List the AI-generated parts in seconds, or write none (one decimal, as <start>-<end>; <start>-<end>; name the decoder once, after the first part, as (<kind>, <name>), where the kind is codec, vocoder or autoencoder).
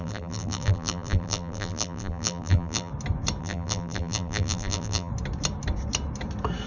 0.0-2.9 (vocoder, BigVGAN v2); 3.4-5.1